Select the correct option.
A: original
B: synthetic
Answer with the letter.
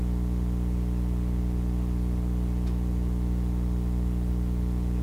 A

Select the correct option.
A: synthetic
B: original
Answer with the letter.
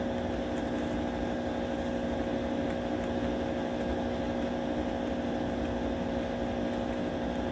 B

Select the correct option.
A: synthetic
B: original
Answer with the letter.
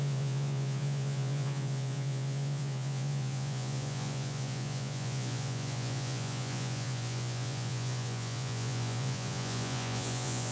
A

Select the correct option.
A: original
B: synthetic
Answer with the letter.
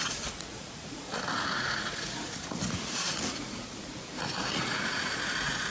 B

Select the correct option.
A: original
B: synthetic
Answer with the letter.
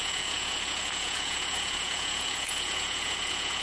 B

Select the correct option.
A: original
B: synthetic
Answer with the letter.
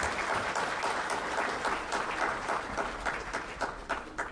A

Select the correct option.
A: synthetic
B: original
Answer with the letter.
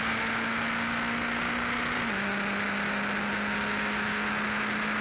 B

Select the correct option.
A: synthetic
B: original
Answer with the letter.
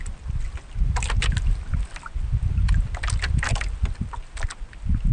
B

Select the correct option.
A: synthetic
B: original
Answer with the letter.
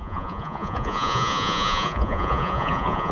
A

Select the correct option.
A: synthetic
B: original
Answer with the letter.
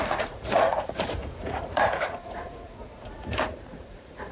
A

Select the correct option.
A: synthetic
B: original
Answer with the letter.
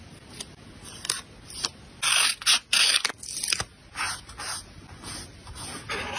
B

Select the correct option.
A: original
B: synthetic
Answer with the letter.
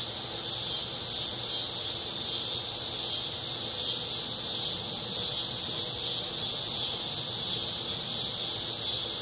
A